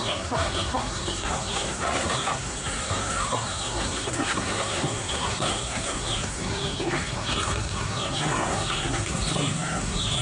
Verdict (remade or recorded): remade